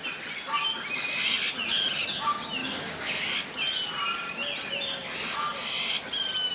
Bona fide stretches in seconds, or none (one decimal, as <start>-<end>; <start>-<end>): 0.0-2.6; 3.2-6.5